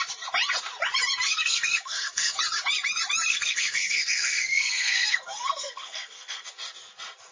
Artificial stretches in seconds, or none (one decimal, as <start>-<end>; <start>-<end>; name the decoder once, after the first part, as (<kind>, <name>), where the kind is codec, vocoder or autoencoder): 1.4-2.4 (codec, SNAC); 3.3-6.5